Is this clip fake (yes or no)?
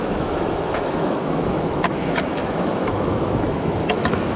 yes